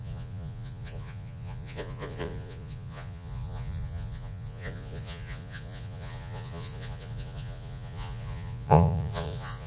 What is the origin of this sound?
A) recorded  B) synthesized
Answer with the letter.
B